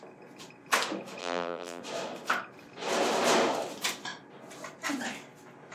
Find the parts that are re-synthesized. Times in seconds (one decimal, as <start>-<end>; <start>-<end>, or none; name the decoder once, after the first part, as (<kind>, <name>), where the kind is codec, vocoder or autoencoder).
1.2-1.8 (vocoder, BigVGAN v2)